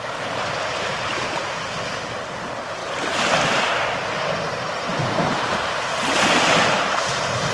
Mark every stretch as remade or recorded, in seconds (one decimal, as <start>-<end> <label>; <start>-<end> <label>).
0.0-7.5 recorded